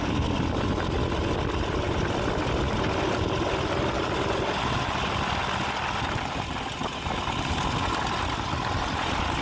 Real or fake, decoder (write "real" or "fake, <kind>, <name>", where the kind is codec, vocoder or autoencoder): real